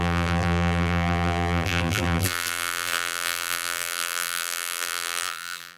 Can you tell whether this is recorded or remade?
remade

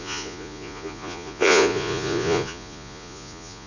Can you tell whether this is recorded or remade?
remade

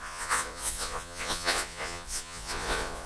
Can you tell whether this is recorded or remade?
remade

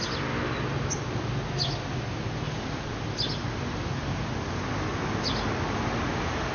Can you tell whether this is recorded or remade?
recorded